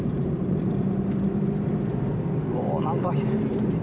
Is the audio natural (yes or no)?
no